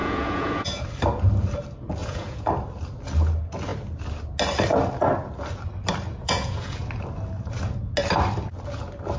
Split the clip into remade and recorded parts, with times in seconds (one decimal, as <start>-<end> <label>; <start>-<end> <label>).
0.0-0.8 remade; 0.8-2.0 recorded; 2.0-2.5 remade; 2.5-6.2 recorded; 6.2-6.8 remade; 6.8-9.2 recorded